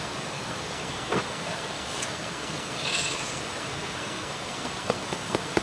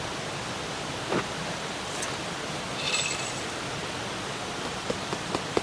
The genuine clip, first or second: second